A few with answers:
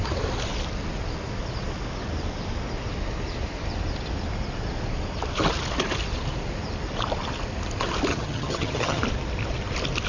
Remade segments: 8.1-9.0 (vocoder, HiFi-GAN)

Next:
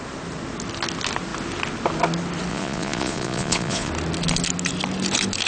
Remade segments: 2.5-3.9 (vocoder, Vocos)

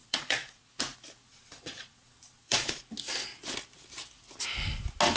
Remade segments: 0.0-0.7 (vocoder, Vocos); 1.3-2.8

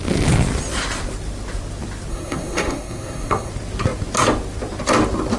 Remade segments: 2.1-3.5 (codec, SNAC)

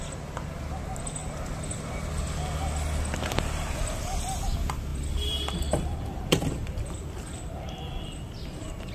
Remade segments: 4.9-7.7 (vocoder, BigVGAN v2)

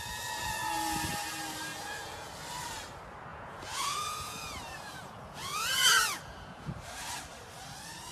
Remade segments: 1.7-2.3 (vocoder, Vocos); 3.3-6.7

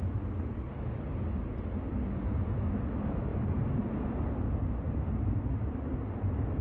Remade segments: none

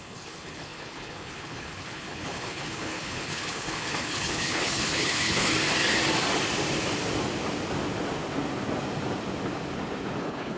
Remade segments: 0.0-5.5 (codec, HILCodec); 10.2-10.6